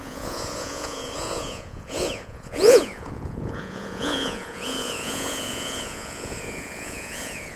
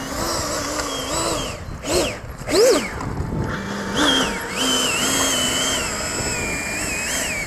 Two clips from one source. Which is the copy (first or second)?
first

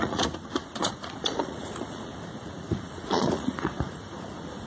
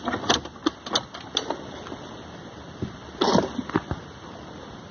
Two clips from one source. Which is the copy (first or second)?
first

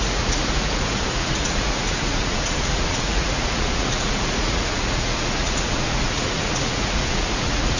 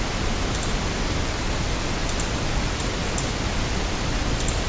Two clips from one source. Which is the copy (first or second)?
first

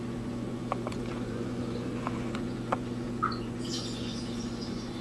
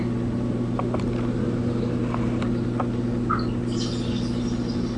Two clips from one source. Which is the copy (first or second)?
first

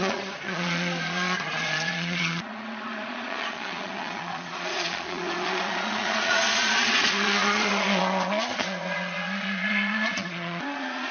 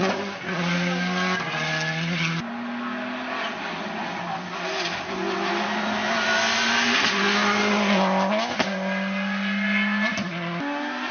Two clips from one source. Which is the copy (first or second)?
first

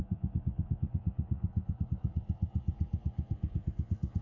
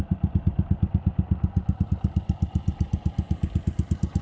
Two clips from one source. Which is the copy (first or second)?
first